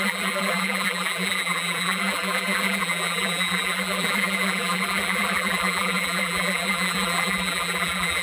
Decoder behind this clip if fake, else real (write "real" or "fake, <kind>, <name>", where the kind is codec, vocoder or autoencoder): fake, vocoder, BigVGAN v2